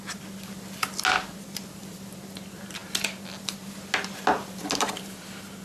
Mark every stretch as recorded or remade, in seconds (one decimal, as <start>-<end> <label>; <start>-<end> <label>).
0.0-5.6 recorded